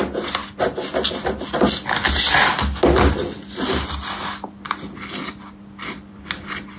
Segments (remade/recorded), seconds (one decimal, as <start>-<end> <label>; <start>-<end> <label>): 0.0-6.8 recorded